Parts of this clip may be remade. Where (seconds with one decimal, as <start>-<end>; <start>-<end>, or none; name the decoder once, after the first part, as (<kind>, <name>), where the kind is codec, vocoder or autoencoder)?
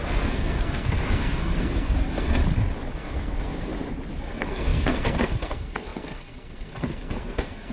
0.0-2.4 (codec, SNAC); 2.9-3.7; 4.2-7.7